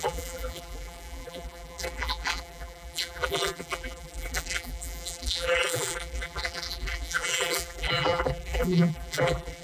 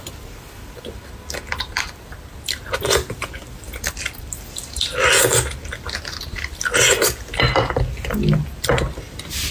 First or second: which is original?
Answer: second